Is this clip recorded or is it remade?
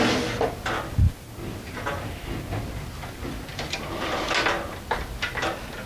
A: recorded